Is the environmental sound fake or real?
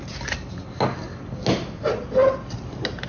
real